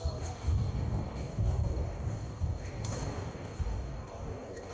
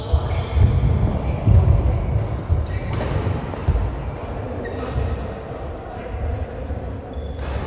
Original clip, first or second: second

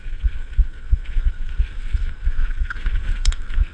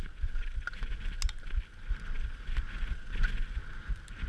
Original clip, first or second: second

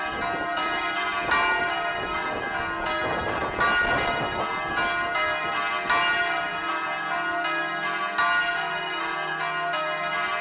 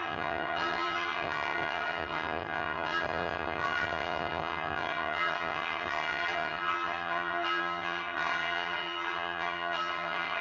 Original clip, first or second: first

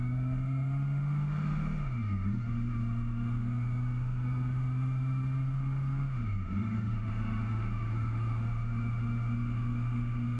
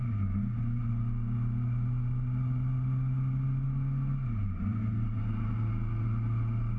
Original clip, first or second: second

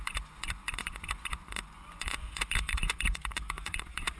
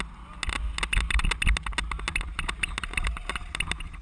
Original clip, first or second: second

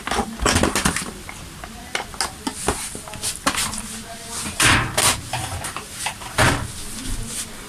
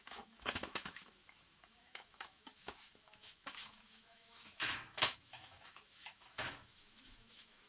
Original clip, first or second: first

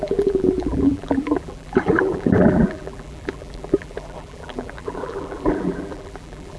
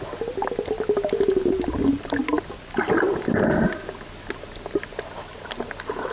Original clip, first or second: second